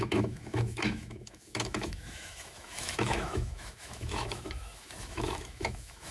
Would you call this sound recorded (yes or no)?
no